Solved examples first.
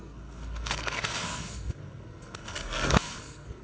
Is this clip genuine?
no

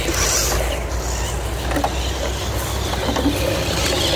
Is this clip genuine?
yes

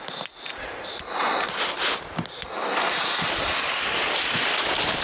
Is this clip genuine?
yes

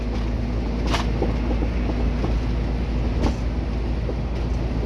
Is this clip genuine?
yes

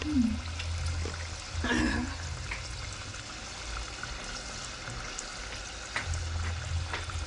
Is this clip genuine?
yes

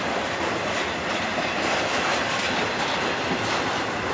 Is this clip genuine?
yes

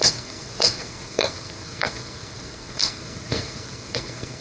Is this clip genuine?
no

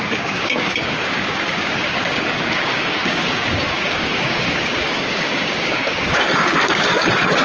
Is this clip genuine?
no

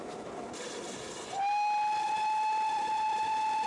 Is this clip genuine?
yes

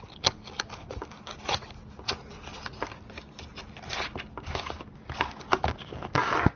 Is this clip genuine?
yes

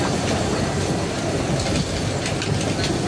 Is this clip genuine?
yes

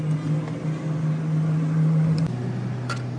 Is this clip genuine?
yes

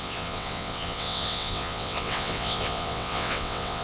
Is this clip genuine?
no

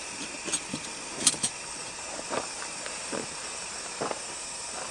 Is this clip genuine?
yes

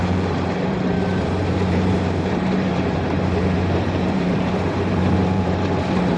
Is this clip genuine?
no